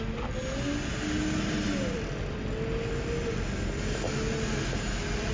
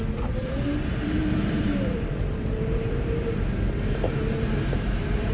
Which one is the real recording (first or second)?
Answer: first